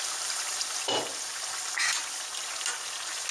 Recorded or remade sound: recorded